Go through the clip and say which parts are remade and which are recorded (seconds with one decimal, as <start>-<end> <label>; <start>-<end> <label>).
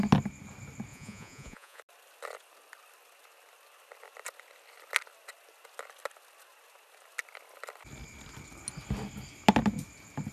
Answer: 0.0-0.9 recorded; 0.9-1.8 remade; 1.8-10.3 recorded